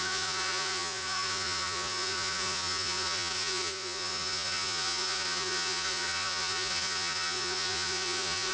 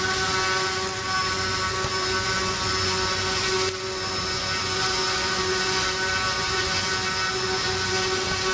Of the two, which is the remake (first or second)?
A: first